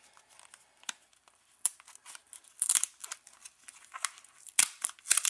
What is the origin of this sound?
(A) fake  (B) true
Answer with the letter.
B